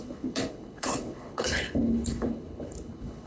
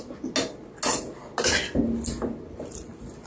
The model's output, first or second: first